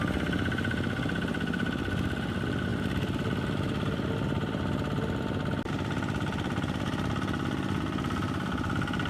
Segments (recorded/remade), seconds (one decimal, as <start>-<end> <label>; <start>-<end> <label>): 0.0-9.1 recorded